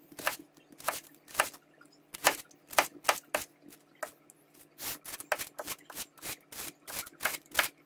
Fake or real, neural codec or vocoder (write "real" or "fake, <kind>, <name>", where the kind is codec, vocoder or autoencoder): real